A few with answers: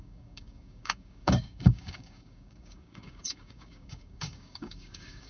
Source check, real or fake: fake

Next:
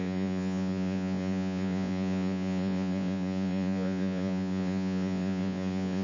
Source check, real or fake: fake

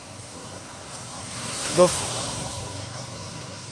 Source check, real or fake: fake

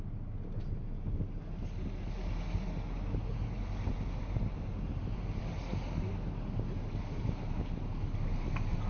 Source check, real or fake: real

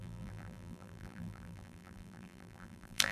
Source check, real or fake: fake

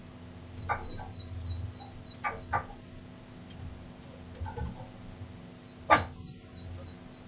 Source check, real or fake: real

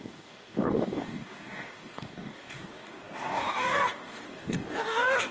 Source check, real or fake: fake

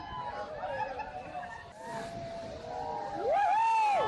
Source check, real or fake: real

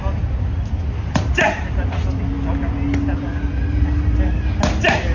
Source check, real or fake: real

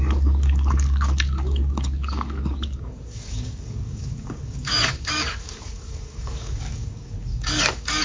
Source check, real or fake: fake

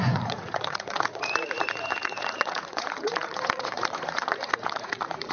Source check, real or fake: fake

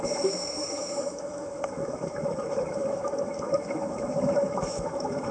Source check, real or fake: fake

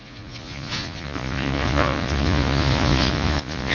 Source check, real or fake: fake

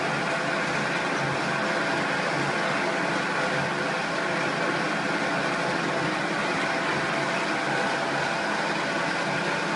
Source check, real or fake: real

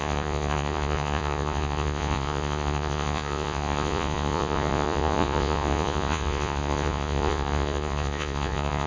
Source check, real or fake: fake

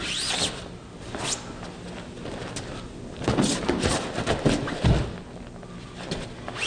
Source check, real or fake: real